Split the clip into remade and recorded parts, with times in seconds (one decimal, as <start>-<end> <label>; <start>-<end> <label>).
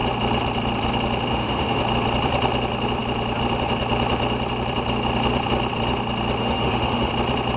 0.0-1.3 recorded; 1.3-1.8 remade; 1.8-6.4 recorded; 6.4-7.1 remade; 7.1-7.6 recorded